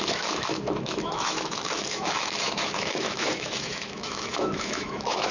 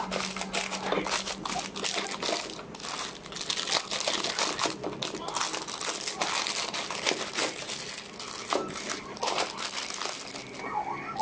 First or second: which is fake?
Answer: first